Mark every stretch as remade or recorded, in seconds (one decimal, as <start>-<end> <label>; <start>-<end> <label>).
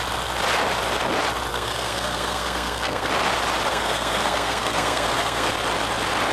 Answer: 0.0-1.5 recorded; 1.5-3.1 remade; 3.1-3.7 recorded; 3.7-5.5 remade; 5.5-6.3 recorded